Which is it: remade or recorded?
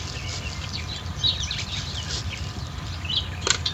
recorded